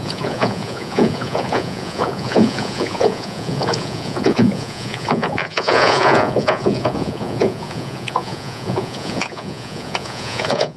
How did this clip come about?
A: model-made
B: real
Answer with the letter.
A